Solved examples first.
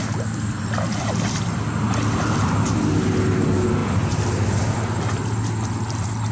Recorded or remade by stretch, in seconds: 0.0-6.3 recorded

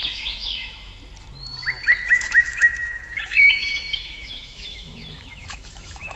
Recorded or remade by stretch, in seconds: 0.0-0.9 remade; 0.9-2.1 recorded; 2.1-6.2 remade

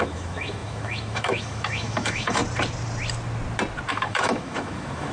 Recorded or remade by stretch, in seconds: 0.0-2.4 remade; 2.4-3.9 recorded; 3.9-5.1 remade

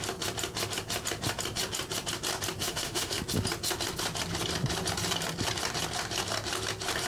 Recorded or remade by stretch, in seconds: 0.0-2.6 recorded; 2.6-3.2 remade; 3.2-7.1 recorded